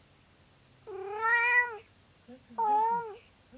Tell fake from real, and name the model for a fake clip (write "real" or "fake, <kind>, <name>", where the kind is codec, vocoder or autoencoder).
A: real